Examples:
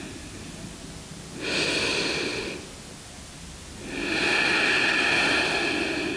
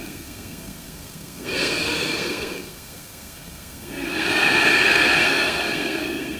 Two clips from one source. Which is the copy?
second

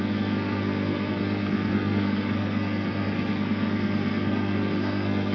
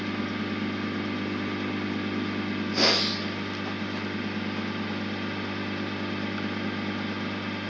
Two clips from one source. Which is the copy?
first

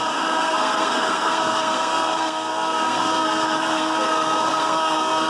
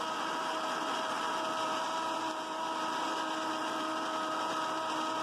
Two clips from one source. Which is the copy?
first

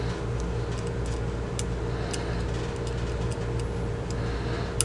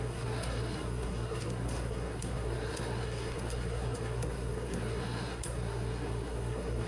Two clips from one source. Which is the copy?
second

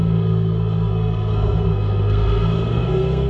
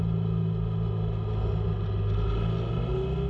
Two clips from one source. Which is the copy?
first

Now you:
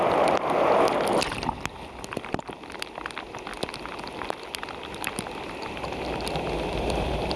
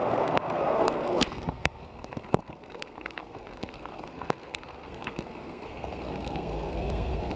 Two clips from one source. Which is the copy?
second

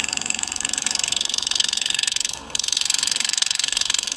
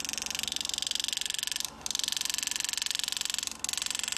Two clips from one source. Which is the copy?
first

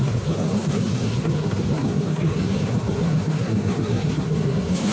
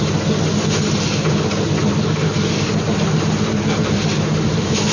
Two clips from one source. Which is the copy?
first